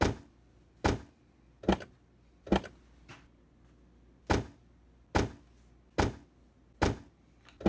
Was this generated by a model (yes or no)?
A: no